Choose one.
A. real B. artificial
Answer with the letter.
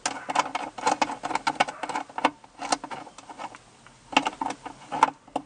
A